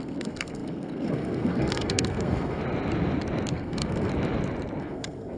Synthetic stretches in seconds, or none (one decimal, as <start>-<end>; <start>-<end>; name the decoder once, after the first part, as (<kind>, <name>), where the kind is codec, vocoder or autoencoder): 0.0-2.6 (codec, SNAC); 3.5-4.1; 4.8-5.4